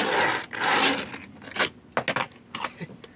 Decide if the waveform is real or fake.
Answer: real